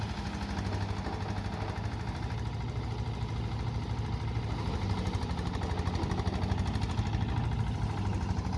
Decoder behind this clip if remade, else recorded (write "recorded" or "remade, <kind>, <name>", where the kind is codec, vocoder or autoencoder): recorded